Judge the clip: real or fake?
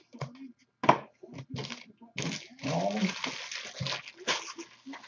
real